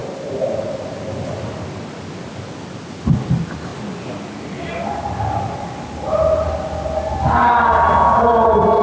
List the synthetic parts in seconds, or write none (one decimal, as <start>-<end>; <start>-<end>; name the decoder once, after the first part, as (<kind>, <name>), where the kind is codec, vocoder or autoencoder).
none